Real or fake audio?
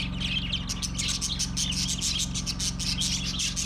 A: real